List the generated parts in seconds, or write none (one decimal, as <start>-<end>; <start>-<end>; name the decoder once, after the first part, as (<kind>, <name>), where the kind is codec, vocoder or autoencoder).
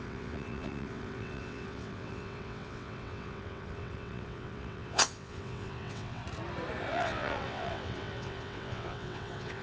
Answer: 0.0-6.2 (vocoder, WaveNeXt); 6.9-9.6